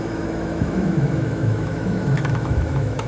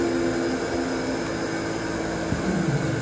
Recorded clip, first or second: second